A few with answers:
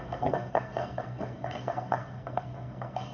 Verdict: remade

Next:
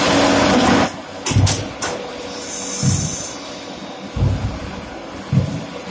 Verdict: recorded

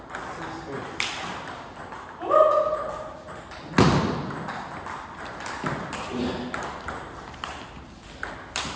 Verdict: recorded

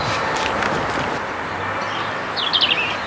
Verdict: recorded